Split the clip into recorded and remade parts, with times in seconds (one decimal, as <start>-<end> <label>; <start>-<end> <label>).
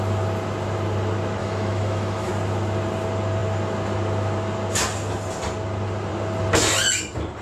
0.0-1.4 recorded; 1.4-2.3 remade; 2.3-7.4 recorded